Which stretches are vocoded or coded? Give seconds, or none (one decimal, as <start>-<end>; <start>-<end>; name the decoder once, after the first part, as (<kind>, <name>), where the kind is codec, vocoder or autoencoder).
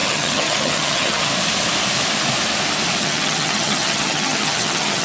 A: 0.0-1.3 (vocoder, HiFi-GAN); 3.0-5.0